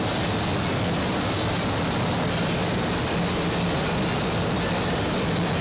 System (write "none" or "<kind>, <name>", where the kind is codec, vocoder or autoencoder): none